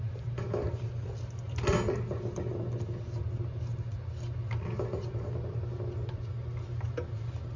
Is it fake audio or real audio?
real